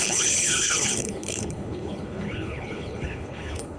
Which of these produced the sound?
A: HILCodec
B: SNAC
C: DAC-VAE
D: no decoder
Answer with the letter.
A